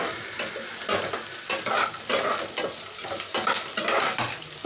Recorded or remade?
recorded